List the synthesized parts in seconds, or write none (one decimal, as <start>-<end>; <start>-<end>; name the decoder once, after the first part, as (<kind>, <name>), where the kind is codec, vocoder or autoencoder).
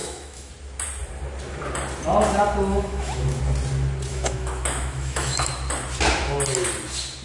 0.0-0.5 (autoencoder, DAC-VAE); 2.7-3.4; 4.1-5.5